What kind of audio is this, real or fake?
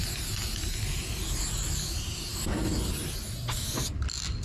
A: real